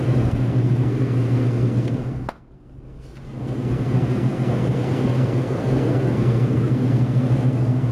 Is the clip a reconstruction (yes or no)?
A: yes